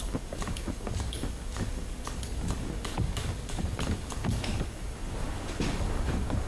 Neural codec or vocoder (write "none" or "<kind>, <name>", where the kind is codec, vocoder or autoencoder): codec, DAC